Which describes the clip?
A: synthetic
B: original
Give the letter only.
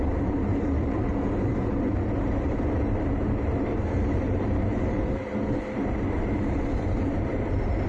A